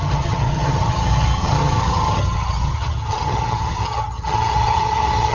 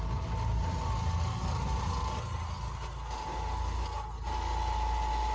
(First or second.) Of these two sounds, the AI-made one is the first